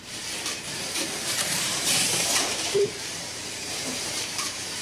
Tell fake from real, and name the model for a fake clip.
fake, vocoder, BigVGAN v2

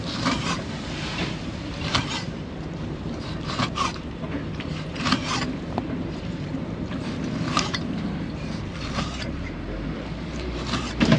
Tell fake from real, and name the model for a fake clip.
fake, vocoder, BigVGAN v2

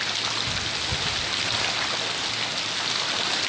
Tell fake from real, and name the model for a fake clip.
real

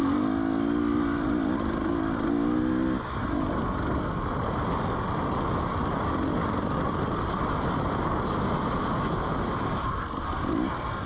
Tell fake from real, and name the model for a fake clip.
real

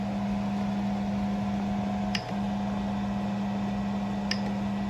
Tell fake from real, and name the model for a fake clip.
real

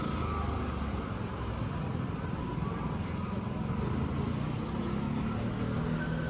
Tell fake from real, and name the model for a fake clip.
real